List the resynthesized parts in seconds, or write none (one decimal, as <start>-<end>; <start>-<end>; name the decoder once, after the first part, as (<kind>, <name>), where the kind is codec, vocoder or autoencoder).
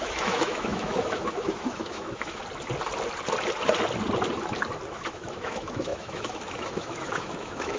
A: 0.0-2.4 (autoencoder, DAC-VAE); 4.9-7.8